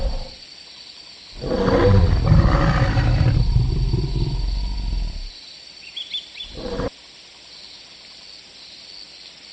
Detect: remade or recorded recorded